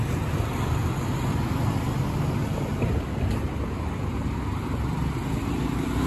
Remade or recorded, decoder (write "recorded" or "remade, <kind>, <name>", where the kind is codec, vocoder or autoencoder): recorded